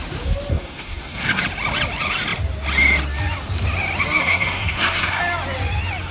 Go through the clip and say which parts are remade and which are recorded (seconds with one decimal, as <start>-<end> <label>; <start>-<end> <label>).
0.0-0.5 recorded; 0.5-1.4 remade; 1.4-4.2 recorded; 4.2-5.2 remade; 5.2-6.1 recorded